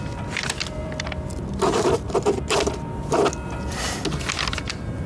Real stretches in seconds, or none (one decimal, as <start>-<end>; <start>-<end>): 0.0-0.8; 2.1-5.1